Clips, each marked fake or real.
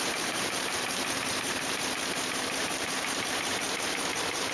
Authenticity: fake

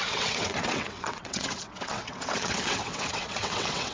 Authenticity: fake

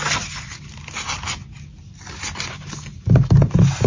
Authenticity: real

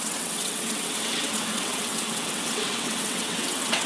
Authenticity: fake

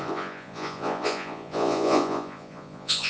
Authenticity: fake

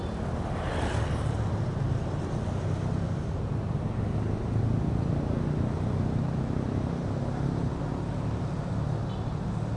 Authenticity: real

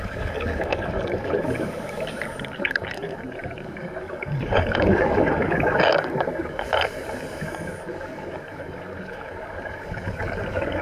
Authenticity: fake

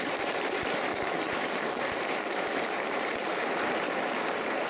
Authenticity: fake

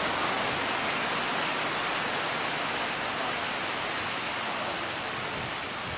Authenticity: real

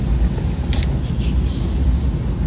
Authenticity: real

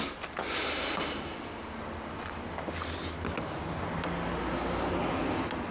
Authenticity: real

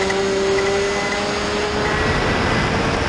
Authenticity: real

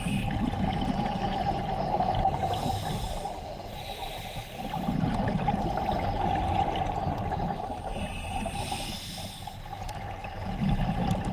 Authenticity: real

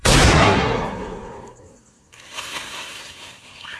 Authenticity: fake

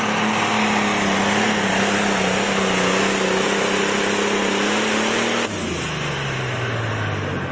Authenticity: real